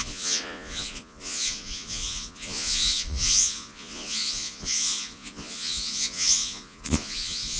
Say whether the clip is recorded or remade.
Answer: remade